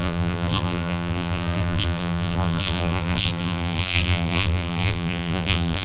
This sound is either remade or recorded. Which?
remade